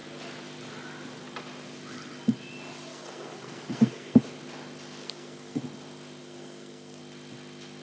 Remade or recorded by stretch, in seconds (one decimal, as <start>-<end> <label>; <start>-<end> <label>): 0.0-2.9 recorded; 2.9-4.2 remade; 4.2-5.0 recorded; 5.0-5.6 remade; 5.6-6.2 recorded; 6.2-7.0 remade; 7.0-7.8 recorded